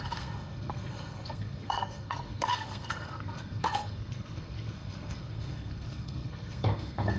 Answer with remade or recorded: remade